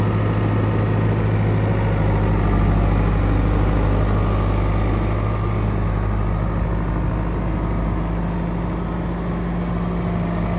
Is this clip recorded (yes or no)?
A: yes